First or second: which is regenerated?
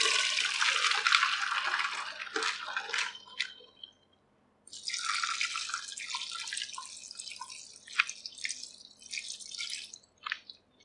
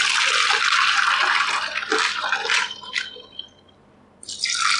second